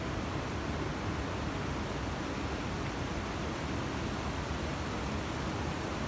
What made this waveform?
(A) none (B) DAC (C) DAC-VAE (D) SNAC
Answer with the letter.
A